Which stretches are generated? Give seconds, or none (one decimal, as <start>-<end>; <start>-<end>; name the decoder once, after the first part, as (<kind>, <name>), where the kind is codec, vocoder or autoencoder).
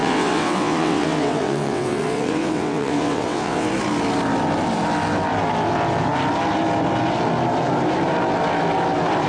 0.0-3.7 (vocoder, WaveNeXt)